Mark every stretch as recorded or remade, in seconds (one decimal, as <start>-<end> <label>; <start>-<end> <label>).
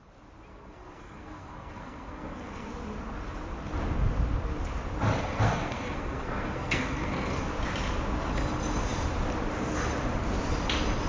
0.0-0.5 recorded; 0.5-2.7 remade; 2.7-5.2 recorded; 5.2-7.5 remade; 7.5-11.1 recorded